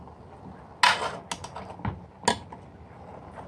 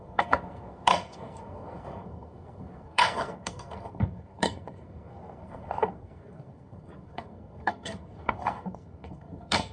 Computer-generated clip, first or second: second